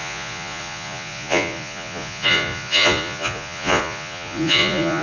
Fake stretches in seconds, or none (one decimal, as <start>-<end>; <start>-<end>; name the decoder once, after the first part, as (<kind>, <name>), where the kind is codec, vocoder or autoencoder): 0.0-5.0 (vocoder, Vocos)